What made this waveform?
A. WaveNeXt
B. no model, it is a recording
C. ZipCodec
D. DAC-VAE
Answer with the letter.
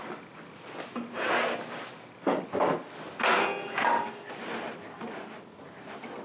B